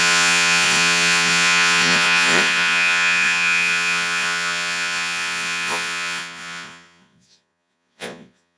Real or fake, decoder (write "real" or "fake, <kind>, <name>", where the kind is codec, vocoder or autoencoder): fake, vocoder, Vocos